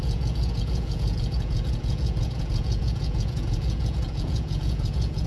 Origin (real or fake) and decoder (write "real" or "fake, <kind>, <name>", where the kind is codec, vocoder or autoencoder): fake, vocoder, Vocos